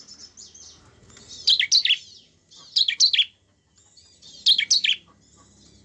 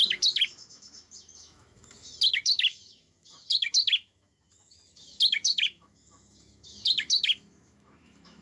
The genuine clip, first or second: first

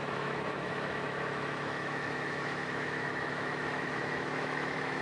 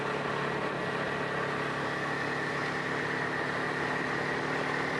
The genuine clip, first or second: second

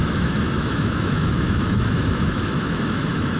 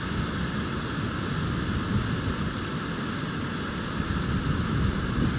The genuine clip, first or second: second